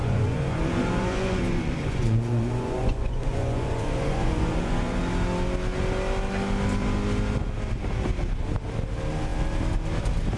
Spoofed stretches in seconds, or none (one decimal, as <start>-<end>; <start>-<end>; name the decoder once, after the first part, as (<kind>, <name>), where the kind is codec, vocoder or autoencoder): 0.0-5.0 (vocoder, Vocos)